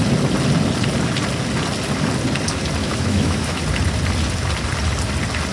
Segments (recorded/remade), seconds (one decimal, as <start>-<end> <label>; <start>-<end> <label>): 0.0-2.8 recorded; 2.8-3.6 remade; 3.6-5.5 recorded